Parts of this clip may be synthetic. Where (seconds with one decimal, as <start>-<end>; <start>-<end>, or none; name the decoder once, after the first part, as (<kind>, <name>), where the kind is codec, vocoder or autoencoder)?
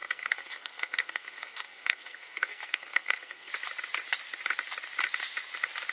0.0-3.5 (codec, SNAC)